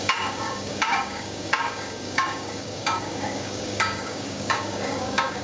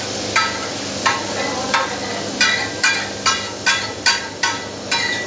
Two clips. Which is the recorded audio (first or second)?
second